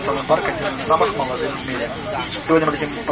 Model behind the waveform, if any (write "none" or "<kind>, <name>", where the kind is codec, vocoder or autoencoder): none